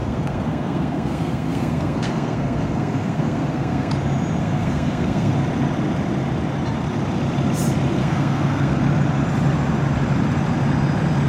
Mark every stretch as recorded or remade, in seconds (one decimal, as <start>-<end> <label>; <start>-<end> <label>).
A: 0.0-3.9 remade; 3.9-4.4 recorded; 4.4-5.3 remade; 5.3-8.0 recorded; 8.0-8.8 remade; 8.8-11.3 recorded